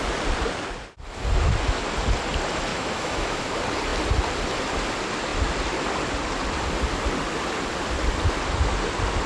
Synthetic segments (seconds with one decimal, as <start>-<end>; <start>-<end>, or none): 2.7-3.4